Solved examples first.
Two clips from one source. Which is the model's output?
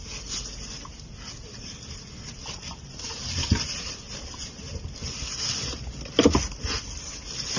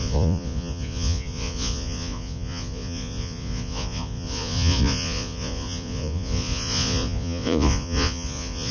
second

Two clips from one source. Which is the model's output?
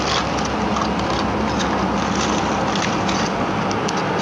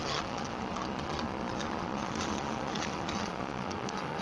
second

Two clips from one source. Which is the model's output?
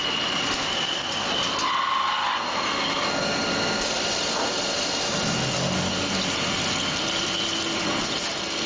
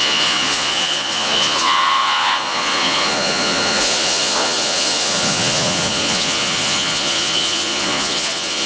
second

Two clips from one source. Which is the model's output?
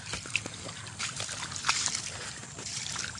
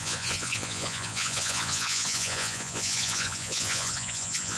second